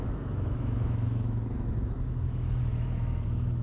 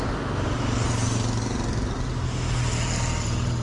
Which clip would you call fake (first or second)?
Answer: first